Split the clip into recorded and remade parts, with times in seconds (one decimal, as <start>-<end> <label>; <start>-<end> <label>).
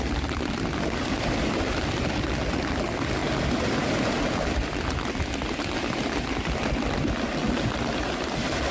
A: 0.0-8.7 recorded